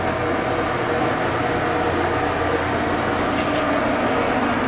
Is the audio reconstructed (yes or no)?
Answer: no